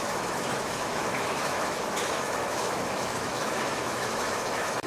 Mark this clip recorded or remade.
remade